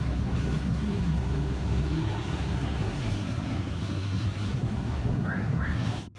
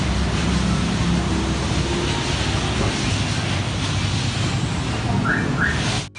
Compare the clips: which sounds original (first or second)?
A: second